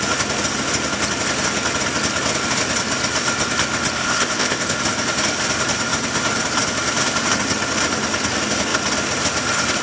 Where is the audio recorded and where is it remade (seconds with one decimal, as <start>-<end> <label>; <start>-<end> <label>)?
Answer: 0.0-4.0 recorded; 4.0-4.8 remade; 4.8-9.8 recorded

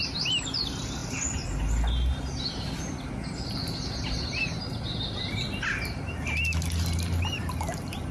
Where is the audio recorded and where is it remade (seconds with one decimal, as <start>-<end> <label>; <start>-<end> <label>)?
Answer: 0.0-8.1 recorded